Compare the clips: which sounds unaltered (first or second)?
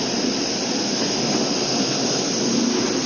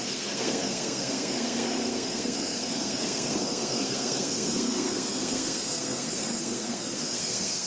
first